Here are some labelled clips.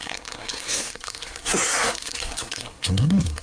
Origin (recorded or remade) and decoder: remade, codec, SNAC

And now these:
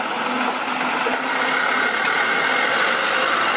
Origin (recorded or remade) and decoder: recorded